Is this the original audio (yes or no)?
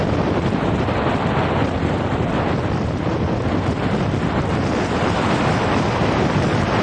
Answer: no